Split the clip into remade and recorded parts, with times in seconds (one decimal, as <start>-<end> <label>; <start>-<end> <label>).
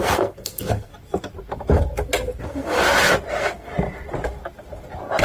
0.0-0.9 remade; 0.9-2.4 recorded; 2.4-2.8 remade; 2.8-3.3 recorded; 3.3-3.7 remade; 3.7-5.2 recorded